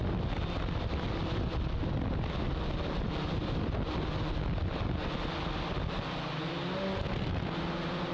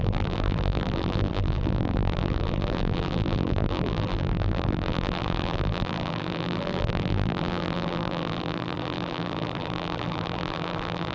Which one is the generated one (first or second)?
second